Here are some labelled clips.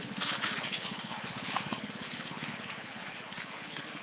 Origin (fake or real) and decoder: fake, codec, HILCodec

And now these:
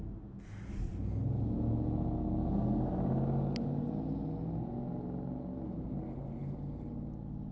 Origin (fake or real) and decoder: real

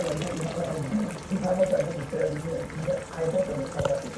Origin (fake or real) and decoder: fake, vocoder, BigVGAN v2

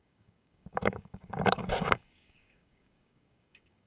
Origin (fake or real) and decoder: fake, codec, DAC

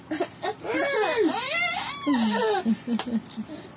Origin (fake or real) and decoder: real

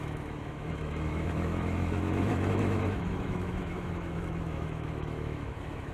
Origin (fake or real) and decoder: fake, autoencoder, DAC-VAE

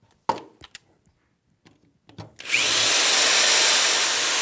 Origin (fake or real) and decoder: real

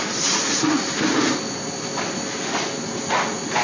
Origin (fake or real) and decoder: real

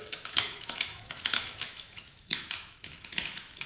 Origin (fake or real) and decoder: fake, autoencoder, DAC-VAE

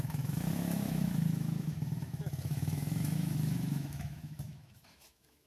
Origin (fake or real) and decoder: fake, autoencoder, DAC-VAE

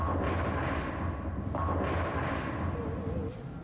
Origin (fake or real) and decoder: real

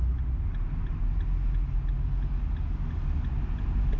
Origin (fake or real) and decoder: real